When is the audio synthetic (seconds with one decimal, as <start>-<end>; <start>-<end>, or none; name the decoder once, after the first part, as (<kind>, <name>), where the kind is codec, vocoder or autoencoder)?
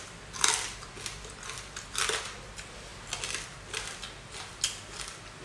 none